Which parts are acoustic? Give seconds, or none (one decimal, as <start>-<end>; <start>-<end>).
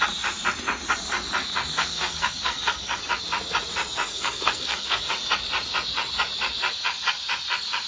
0.0-1.8; 3.0-4.1; 5.1-7.9